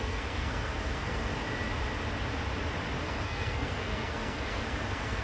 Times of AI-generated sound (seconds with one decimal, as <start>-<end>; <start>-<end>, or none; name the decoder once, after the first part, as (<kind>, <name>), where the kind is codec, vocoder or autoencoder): 0.0-1.3 (codec, SNAC); 3.0-5.2